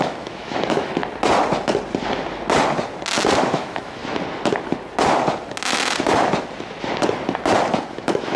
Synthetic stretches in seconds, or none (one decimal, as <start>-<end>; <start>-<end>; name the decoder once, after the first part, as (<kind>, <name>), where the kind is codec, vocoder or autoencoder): 0.0-1.0 (autoencoder, DAC-VAE); 3.4-4.0; 7.9-8.4